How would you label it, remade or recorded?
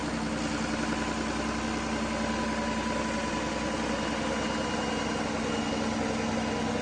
recorded